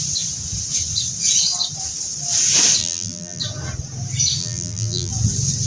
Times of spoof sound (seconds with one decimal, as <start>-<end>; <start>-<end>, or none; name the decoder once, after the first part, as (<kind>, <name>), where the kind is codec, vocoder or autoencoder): 2.8-3.4 (vocoder, BigVGAN v2); 4.4-5.1